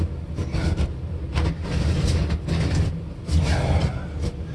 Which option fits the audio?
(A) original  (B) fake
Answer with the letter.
A